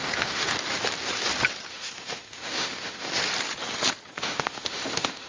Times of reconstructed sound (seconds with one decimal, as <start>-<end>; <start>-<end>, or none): 0.0-0.5; 1.7-3.1; 4.1-5.3